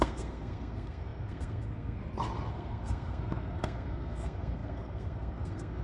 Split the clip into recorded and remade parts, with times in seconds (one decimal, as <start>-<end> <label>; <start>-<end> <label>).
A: 0.0-2.0 remade; 2.0-2.5 recorded; 2.5-5.8 remade